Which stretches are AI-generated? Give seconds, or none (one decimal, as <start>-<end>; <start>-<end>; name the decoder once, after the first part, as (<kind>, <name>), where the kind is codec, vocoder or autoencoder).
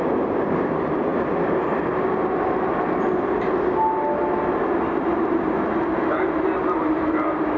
none